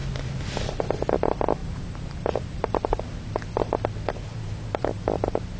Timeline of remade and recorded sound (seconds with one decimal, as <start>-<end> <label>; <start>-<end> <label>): 0.0-1.6 recorded; 1.6-2.7 remade; 2.7-4.3 recorded; 4.3-5.6 remade

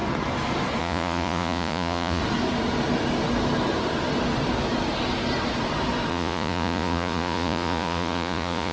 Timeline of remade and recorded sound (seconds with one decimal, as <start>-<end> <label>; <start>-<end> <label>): 0.0-0.8 recorded; 0.8-2.2 remade; 2.2-6.1 recorded; 6.1-8.7 remade